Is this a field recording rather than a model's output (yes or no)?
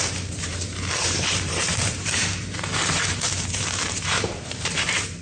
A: no